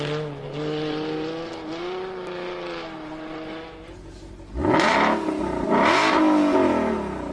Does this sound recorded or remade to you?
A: recorded